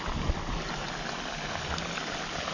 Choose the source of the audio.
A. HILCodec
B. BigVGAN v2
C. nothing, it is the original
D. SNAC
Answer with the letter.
C